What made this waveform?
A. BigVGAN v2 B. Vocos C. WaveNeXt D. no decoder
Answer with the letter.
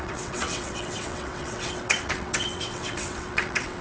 C